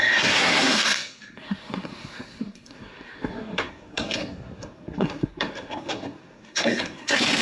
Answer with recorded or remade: remade